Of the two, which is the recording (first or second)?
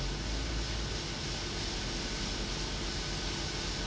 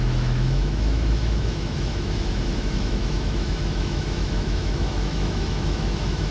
first